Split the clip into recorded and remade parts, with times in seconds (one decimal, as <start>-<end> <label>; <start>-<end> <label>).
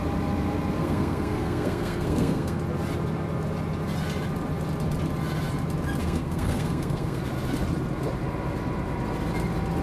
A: 0.0-0.8 recorded; 0.8-2.6 remade; 2.6-6.0 recorded; 6.0-7.2 remade; 7.2-9.8 recorded